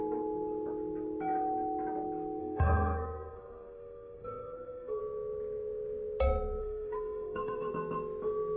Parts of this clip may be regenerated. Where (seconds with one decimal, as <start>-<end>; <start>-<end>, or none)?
2.4-5.0; 6.6-7.7

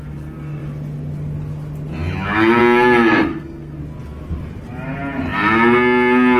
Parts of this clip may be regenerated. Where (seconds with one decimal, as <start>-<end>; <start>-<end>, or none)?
3.3-3.8

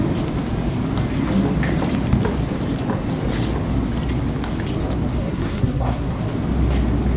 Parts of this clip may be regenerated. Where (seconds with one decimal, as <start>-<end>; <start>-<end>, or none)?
5.2-6.2

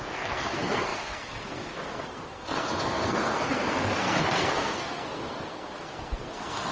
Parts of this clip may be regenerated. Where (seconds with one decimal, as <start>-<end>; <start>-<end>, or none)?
0.0-6.7

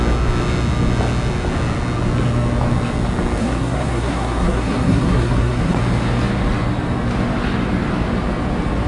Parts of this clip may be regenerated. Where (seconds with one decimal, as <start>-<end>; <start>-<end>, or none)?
3.4-5.8

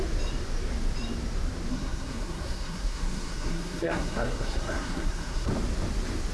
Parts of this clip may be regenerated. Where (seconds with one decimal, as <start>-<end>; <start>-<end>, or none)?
1.7-5.5

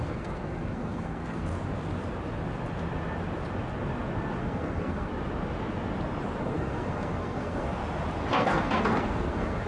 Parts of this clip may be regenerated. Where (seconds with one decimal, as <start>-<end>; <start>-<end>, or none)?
0.0-1.5; 4.4-5.1; 6.4-7.8; 8.3-9.7